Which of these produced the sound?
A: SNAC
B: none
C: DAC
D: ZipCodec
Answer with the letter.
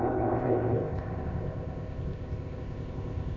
D